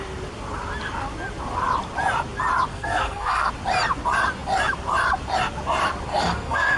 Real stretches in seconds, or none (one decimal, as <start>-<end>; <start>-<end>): 0.0-2.7; 3.5-6.1